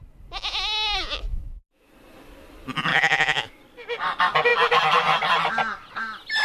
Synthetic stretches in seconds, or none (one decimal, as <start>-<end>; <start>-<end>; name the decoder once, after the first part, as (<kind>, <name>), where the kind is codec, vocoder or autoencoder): 1.3-1.9 (autoencoder, DAC-VAE); 2.9-3.6